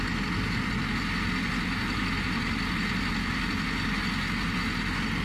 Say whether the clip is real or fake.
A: real